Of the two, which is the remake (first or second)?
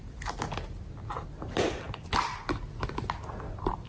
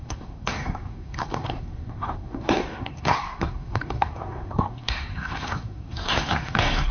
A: second